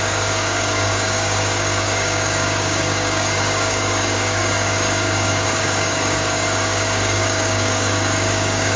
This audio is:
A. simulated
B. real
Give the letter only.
A